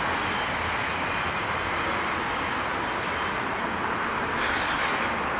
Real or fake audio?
real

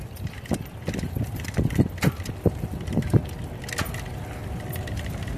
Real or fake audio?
real